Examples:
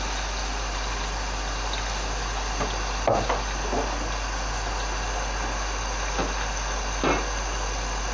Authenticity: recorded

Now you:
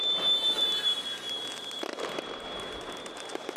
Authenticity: remade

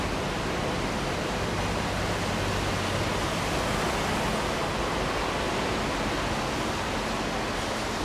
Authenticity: recorded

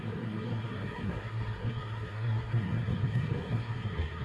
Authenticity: remade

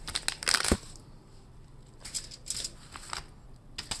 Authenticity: recorded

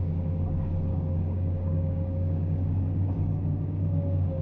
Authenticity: remade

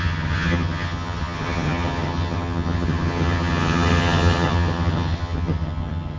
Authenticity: remade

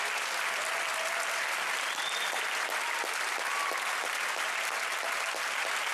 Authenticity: recorded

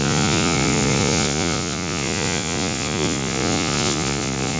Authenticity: remade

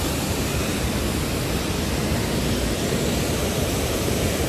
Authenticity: recorded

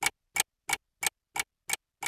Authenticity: recorded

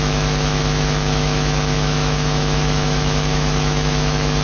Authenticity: remade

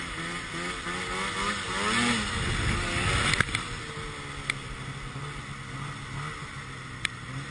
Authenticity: recorded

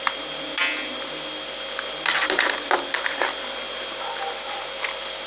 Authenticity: recorded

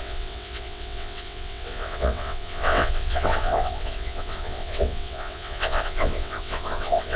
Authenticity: remade